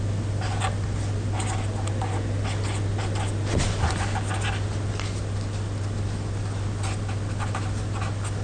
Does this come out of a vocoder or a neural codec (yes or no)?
no